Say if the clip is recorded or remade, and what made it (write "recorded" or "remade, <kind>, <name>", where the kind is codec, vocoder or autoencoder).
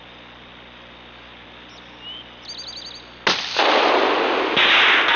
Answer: recorded